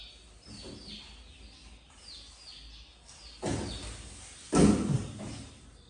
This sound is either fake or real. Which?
real